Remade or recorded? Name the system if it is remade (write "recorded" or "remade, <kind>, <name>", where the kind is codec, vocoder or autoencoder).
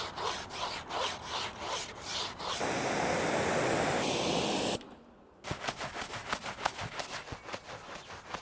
recorded